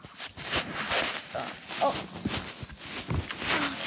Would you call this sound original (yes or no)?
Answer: yes